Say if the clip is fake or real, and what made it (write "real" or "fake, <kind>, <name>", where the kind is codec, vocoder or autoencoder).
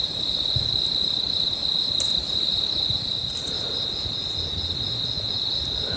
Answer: real